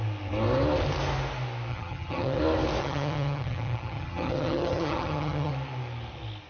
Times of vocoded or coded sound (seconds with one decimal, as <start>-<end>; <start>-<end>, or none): 1.7-2.4; 2.8-5.5